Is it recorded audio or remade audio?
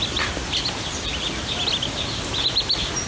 recorded